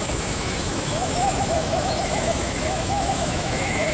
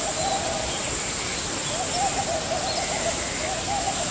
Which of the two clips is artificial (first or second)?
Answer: first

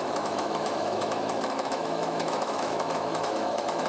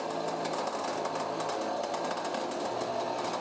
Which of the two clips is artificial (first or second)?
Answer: first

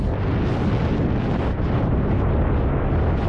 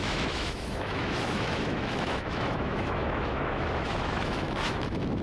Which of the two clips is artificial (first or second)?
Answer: second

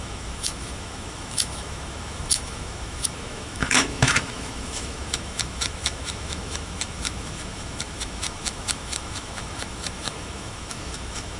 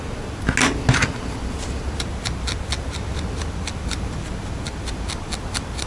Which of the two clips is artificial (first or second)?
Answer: first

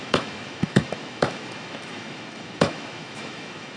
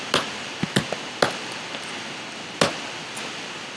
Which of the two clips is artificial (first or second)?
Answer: first